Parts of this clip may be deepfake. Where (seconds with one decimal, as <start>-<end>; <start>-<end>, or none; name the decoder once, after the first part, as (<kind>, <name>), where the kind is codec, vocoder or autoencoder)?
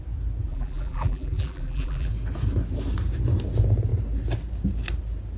0.5-2.1 (vocoder, BigVGAN v2)